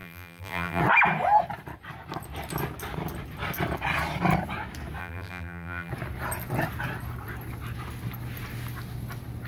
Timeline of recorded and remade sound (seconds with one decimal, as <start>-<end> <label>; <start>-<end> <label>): 0.0-0.8 remade; 0.8-5.0 recorded; 5.0-5.9 remade; 5.9-9.5 recorded